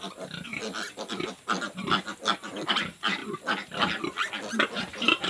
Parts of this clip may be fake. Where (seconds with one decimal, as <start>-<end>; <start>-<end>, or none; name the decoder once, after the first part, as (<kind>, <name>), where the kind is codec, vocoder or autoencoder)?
0.0-0.6 (vocoder, BigVGAN v2); 2.7-3.2; 4.8-5.3